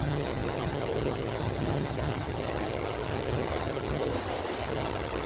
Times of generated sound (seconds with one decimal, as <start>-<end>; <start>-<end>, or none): 0.0-4.1; 4.6-5.3